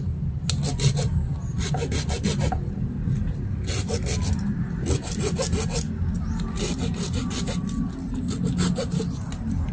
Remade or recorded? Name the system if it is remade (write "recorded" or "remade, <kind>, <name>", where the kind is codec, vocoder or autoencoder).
recorded